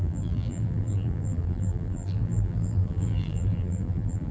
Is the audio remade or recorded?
remade